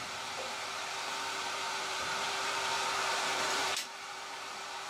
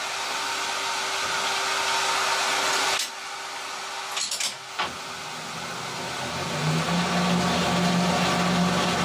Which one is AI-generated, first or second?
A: first